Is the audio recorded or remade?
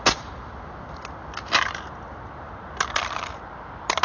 recorded